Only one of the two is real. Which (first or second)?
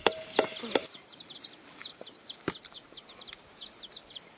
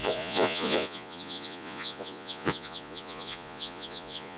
first